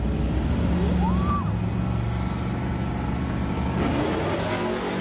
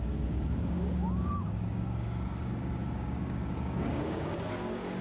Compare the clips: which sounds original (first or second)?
first